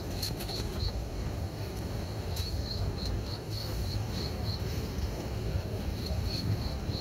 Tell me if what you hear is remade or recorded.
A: remade